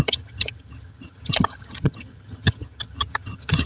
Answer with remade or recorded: remade